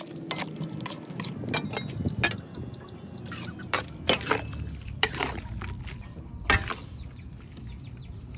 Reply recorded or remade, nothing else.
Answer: recorded